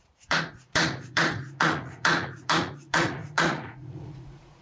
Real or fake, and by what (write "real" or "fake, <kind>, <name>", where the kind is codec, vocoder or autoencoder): fake, vocoder, Vocos